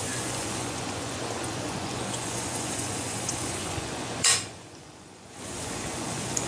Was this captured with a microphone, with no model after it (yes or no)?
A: no